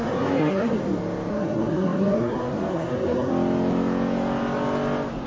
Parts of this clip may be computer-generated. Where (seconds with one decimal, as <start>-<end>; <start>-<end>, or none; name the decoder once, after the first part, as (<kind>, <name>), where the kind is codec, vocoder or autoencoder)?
0.0-0.8 (codec, SNAC); 1.3-3.3